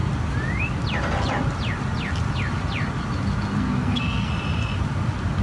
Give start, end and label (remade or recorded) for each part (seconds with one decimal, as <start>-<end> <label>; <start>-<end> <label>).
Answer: 0.0-3.5 recorded; 3.5-4.3 remade; 4.3-5.4 recorded